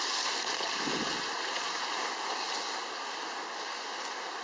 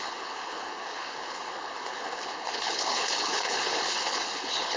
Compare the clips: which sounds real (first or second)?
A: first